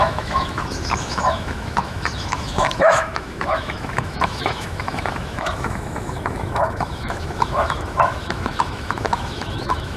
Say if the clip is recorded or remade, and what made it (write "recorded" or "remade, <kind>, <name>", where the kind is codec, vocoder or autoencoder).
remade, autoencoder, DAC-VAE